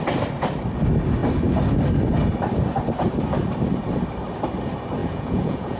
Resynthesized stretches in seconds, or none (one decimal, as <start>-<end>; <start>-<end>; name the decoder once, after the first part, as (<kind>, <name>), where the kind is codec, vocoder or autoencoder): 5.0-5.8 (vocoder, Vocos)

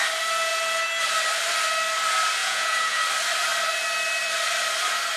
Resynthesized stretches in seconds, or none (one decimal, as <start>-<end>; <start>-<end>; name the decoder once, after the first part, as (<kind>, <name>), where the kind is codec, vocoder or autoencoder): 2.4-3.0 (vocoder, Vocos)

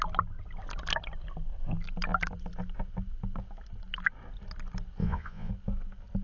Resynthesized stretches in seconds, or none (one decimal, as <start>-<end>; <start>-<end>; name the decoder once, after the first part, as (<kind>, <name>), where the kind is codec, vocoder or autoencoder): 5.0-5.5 (vocoder, Vocos)

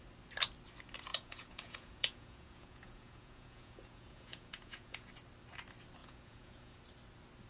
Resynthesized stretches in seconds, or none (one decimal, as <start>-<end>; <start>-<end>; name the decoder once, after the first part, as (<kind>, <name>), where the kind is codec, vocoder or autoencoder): 1.1-5.1 (vocoder, Vocos); 6.0-6.8